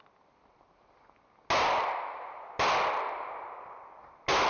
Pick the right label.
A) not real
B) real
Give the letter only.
B